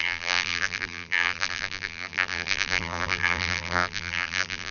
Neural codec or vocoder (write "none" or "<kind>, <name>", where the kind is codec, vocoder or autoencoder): vocoder, BigVGAN v2